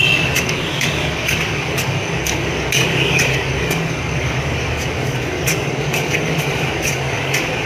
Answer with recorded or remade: remade